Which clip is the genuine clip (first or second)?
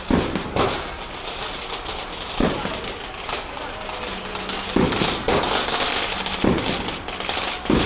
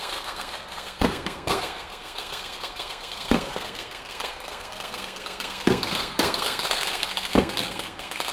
first